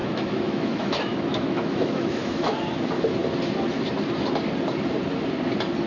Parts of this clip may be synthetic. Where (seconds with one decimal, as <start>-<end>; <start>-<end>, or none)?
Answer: 0.0-2.6